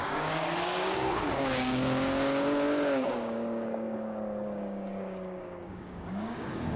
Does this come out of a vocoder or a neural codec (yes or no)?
yes